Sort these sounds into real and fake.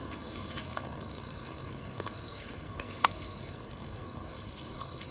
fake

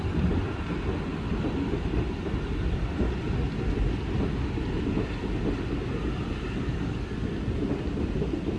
real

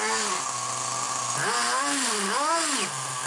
real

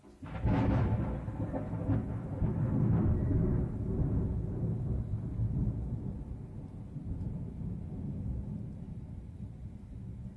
real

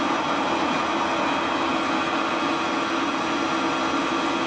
real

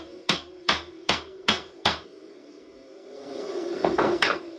fake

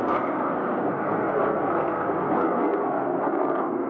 fake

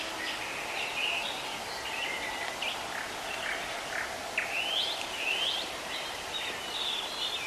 real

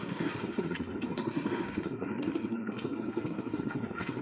fake